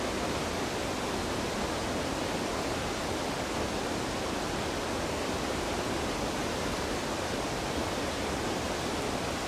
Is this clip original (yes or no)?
yes